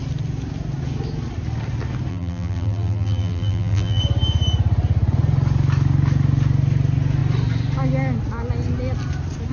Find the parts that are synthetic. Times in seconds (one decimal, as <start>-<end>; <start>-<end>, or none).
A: 2.1-4.0